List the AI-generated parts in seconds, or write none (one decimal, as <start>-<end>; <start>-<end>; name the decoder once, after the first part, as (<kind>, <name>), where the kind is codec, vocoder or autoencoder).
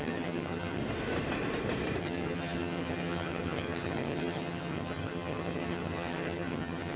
0.0-0.8 (vocoder, HiFi-GAN); 2.0-7.0